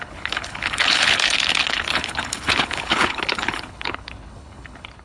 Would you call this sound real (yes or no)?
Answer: no